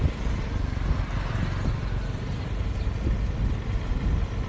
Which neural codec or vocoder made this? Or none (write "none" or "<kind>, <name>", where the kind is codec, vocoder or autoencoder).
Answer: none